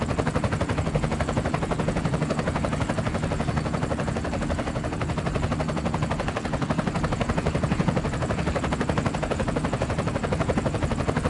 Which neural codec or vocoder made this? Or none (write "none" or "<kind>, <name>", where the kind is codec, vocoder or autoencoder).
vocoder, Vocos